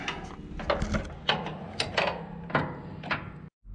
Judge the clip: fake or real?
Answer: real